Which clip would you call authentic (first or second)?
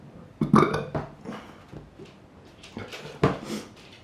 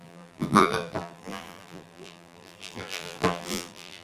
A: first